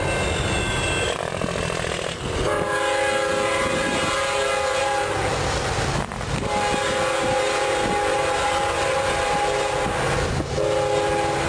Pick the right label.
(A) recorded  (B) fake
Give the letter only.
A